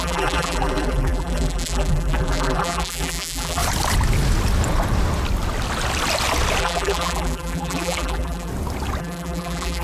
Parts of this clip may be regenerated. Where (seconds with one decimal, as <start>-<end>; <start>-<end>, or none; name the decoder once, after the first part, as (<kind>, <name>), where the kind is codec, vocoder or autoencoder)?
0.0-3.6 (vocoder, BigVGAN v2); 6.6-8.5; 9.0-9.8